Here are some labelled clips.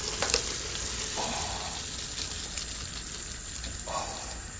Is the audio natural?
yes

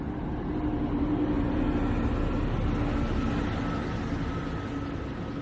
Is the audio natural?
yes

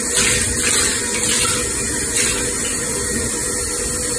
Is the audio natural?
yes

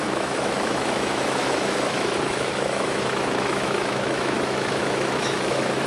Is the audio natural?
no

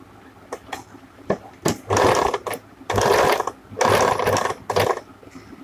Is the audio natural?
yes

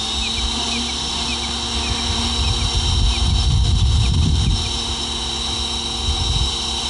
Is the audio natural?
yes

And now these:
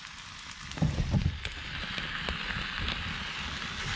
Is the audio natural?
yes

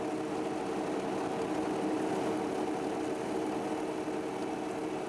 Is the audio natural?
yes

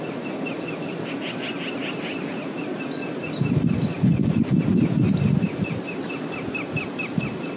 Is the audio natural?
yes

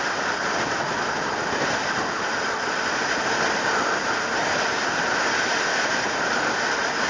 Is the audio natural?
yes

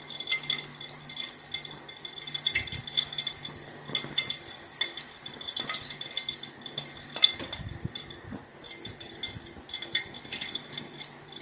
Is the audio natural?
yes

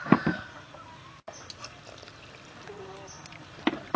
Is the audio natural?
yes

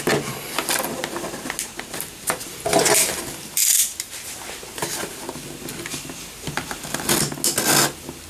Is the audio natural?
yes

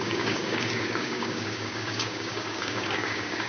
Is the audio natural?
no